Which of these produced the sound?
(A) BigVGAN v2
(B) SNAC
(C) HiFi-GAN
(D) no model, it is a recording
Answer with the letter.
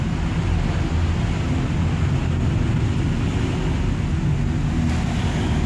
D